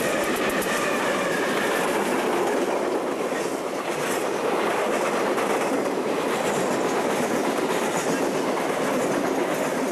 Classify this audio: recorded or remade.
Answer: recorded